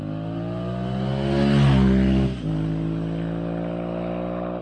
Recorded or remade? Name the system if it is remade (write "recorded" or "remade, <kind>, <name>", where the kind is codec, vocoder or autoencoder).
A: recorded